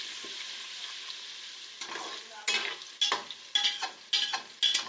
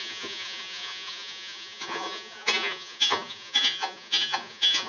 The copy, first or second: second